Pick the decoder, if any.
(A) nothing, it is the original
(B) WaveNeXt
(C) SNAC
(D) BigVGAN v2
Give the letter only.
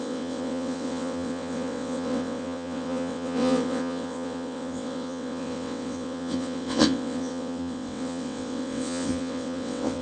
B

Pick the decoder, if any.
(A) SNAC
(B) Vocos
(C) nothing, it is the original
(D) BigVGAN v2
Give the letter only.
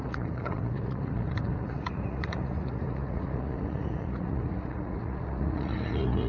B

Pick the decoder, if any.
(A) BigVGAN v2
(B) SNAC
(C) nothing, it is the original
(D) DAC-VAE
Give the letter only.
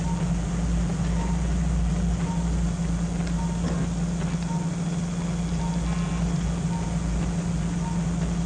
C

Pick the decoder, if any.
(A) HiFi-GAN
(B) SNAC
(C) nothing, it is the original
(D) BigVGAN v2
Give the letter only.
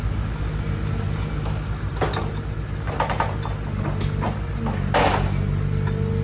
C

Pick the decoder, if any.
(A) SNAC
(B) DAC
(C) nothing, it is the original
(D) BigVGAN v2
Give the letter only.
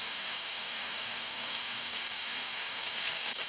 B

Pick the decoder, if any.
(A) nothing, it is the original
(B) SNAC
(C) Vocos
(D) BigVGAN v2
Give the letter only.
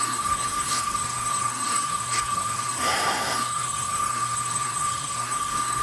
B